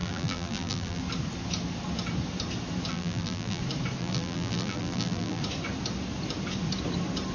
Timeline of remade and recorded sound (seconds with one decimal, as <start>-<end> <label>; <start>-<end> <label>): 0.0-1.0 remade; 1.0-2.9 recorded; 2.9-3.6 remade; 3.6-4.0 recorded; 4.0-5.4 remade; 5.4-7.3 recorded